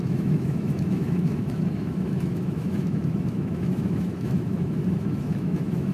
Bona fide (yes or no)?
no